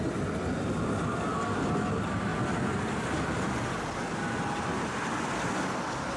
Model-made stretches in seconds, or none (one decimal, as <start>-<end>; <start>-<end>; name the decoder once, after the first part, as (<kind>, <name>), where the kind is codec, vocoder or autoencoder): none